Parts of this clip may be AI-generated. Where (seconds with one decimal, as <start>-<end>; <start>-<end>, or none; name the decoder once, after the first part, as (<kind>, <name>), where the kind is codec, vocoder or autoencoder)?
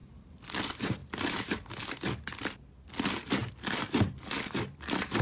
0.0-0.6 (vocoder, BigVGAN v2); 1.0-1.9; 3.4-4.1